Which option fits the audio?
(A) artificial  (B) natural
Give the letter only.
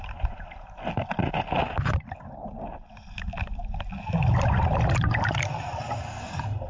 B